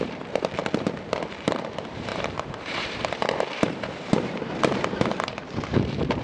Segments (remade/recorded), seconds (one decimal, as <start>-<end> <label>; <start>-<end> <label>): 0.0-0.6 remade; 0.6-1.3 recorded; 1.3-6.2 remade